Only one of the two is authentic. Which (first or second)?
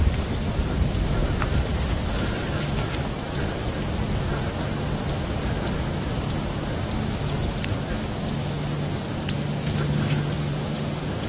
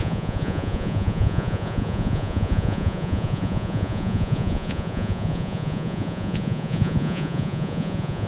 first